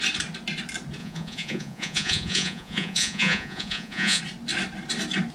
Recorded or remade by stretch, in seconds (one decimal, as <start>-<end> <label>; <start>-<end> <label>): 0.0-1.0 recorded; 1.0-4.2 remade; 4.2-5.3 recorded